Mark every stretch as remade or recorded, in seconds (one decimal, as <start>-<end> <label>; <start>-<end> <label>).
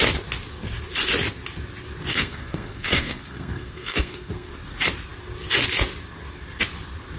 0.0-2.1 recorded; 2.1-4.5 remade; 4.5-7.2 recorded